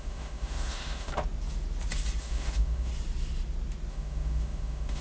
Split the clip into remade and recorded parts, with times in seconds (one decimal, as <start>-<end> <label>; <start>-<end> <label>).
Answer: 0.0-1.1 remade; 1.1-2.2 recorded; 2.2-2.9 remade; 2.9-3.9 recorded; 3.9-5.0 remade